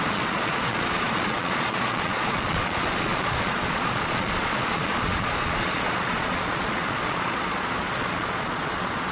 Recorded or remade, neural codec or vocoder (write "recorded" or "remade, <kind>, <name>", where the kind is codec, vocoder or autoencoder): remade, vocoder, Vocos